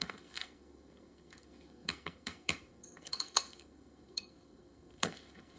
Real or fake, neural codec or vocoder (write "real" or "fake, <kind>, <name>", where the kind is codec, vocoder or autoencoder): fake, codec, SNAC